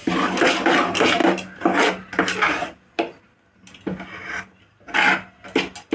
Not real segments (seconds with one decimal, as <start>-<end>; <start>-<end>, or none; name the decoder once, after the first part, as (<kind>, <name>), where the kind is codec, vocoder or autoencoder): none